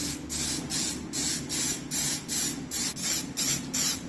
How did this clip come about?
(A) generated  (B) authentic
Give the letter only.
B